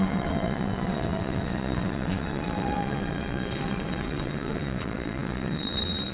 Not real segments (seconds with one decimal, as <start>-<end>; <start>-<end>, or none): 0.0-6.1